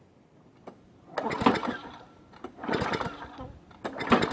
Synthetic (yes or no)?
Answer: no